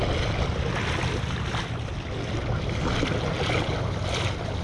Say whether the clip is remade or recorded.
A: recorded